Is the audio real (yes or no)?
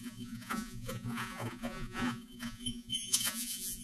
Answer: no